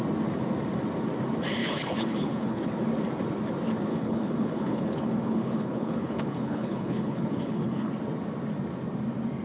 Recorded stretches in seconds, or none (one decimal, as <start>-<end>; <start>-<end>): 0.0-1.6; 2.6-3.9; 7.9-9.4